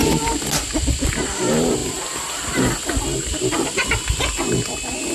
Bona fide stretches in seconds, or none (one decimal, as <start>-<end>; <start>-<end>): 0.0-5.1